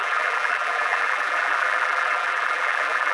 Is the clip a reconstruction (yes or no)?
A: yes